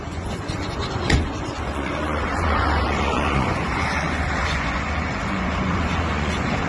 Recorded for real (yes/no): no